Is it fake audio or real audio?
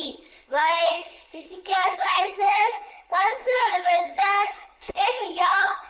fake